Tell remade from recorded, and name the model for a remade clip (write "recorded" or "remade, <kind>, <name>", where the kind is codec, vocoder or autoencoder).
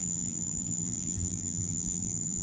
remade, vocoder, BigVGAN v2